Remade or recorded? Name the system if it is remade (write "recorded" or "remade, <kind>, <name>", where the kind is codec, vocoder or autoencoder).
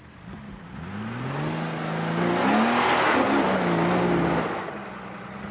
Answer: recorded